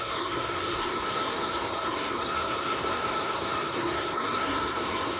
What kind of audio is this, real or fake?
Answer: fake